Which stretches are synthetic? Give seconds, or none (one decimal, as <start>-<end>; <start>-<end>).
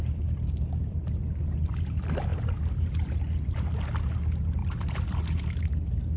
2.3-3.7; 4.6-5.6